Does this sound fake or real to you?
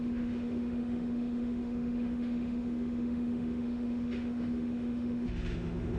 fake